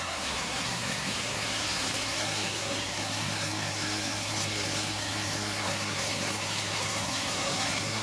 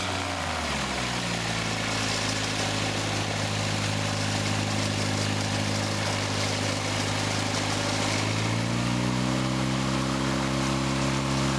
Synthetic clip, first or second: first